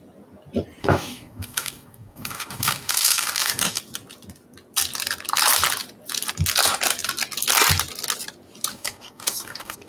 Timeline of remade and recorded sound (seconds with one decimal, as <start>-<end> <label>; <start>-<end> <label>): 0.0-0.8 recorded; 0.8-3.8 remade; 3.8-8.7 recorded; 8.7-9.9 remade